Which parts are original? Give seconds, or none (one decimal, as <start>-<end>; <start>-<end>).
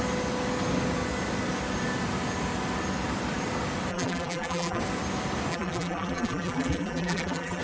0.0-3.9; 4.8-5.5